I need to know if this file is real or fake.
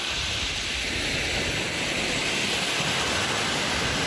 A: real